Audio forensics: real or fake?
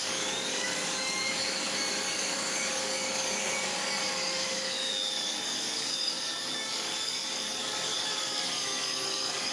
fake